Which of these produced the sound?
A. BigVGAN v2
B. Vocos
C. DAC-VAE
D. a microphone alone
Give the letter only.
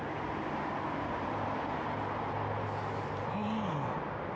D